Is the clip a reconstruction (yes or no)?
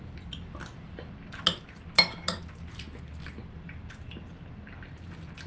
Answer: no